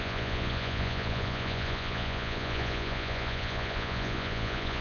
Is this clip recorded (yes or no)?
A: no